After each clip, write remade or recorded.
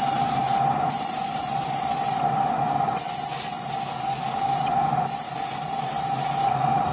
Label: recorded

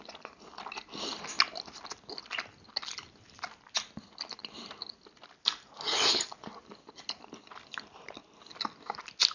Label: recorded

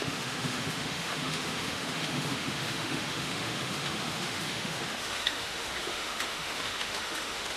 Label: remade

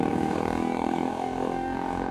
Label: remade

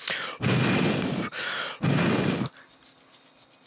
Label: recorded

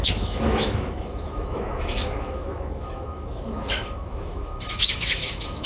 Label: remade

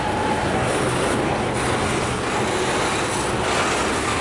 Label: recorded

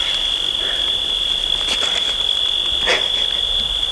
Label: recorded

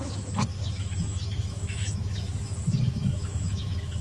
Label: remade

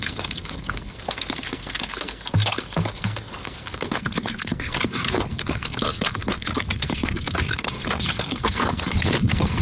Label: remade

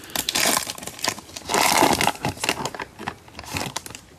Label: recorded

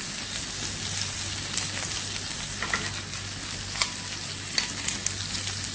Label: recorded